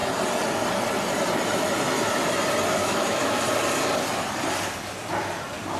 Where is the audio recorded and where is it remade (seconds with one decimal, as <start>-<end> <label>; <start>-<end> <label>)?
0.0-2.8 recorded; 2.8-3.4 remade; 3.4-5.8 recorded